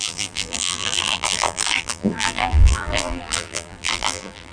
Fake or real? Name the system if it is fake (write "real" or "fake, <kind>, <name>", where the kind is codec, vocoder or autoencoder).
fake, vocoder, BigVGAN v2